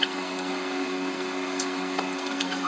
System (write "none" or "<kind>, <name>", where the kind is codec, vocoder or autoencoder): codec, SNAC